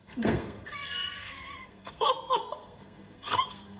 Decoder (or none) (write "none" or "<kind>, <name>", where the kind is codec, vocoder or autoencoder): codec, SNAC